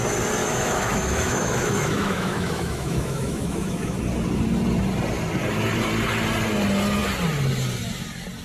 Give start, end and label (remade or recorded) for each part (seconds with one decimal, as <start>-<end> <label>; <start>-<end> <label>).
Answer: 0.0-0.4 recorded; 0.4-4.0 remade; 4.0-8.4 recorded